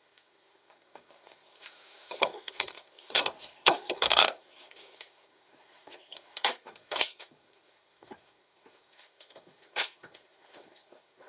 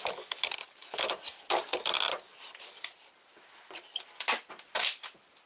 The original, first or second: second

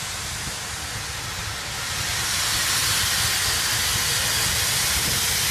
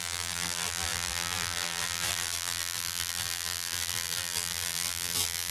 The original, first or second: first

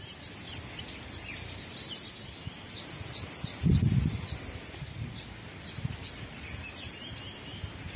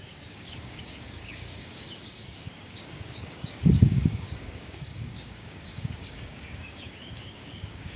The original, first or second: first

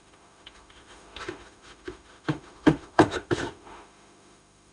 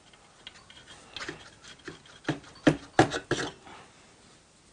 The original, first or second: second